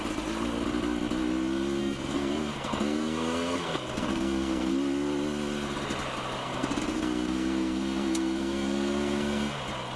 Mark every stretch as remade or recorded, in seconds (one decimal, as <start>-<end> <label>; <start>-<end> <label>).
0.0-1.8 recorded; 1.8-4.7 remade; 4.7-6.4 recorded; 6.4-9.6 remade; 9.6-10.0 recorded